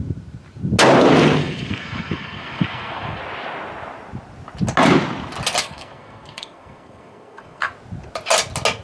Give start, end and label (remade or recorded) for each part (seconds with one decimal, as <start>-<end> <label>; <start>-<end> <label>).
0.0-1.4 recorded; 1.4-3.2 remade; 3.2-5.6 recorded; 5.6-7.7 remade; 7.7-8.8 recorded

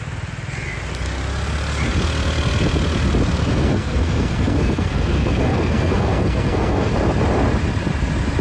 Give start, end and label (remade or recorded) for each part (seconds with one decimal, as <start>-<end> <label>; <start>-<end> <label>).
0.0-3.4 recorded; 3.4-6.9 remade; 6.9-8.4 recorded

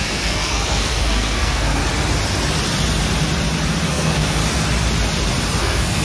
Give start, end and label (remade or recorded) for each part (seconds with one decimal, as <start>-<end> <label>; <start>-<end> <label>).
0.0-1.8 remade; 1.8-3.9 recorded; 3.9-4.4 remade; 4.4-5.6 recorded; 5.6-6.0 remade

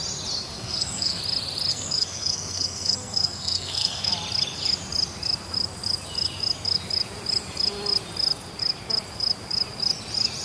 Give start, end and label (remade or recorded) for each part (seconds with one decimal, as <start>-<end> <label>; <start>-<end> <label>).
0.0-0.5 recorded; 0.5-1.2 remade; 1.2-1.7 recorded; 1.7-4.1 remade; 4.1-10.4 recorded

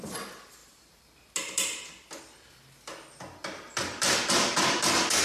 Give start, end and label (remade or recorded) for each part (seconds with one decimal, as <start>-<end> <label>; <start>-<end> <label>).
0.0-5.2 recorded

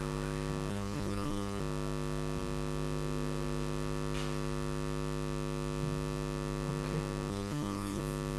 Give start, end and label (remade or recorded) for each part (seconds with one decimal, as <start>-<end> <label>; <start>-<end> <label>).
0.0-0.7 recorded; 0.7-1.6 remade; 1.6-7.3 recorded; 7.3-8.0 remade; 8.0-8.4 recorded

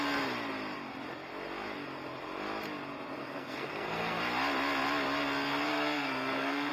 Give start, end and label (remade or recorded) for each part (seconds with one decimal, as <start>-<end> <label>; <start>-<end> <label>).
0.0-3.2 recorded; 3.2-4.2 remade; 4.2-5.7 recorded; 5.7-6.7 remade

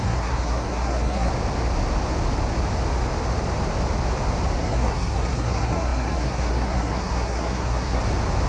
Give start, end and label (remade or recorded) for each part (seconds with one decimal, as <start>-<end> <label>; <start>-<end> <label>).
0.0-1.3 remade; 1.3-4.6 recorded; 4.6-8.0 remade; 8.0-8.5 recorded